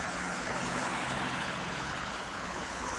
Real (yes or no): no